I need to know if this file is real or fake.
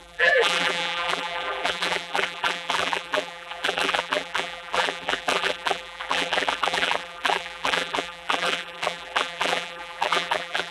fake